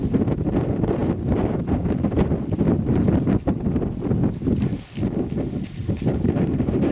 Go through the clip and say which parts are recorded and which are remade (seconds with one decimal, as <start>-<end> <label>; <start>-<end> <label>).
0.0-1.0 recorded; 1.0-1.5 remade; 1.5-5.8 recorded; 5.8-6.9 remade